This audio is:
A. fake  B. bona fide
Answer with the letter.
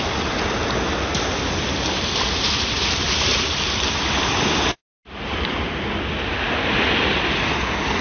B